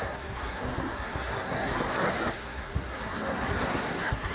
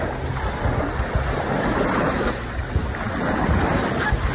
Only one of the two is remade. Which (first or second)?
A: first